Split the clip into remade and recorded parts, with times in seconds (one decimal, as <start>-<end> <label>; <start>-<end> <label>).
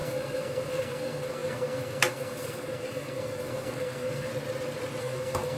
0.0-4.3 remade; 4.3-5.0 recorded; 5.0-5.6 remade